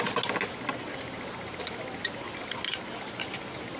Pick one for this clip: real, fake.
real